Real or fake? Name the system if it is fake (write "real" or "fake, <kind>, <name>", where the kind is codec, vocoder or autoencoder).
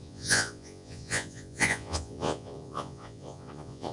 fake, vocoder, Vocos